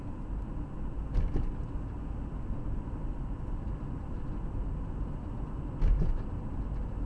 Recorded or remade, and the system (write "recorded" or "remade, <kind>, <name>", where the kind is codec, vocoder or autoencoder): recorded